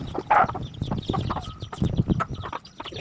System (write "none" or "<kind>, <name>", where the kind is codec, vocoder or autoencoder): none